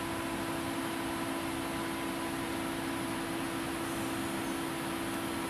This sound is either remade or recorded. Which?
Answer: recorded